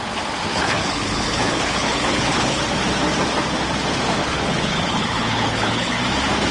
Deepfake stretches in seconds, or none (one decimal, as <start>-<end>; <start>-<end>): 0.5-2.6; 4.2-5.9